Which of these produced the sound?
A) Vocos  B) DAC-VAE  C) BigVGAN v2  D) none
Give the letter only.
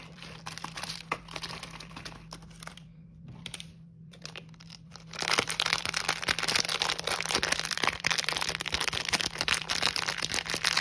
C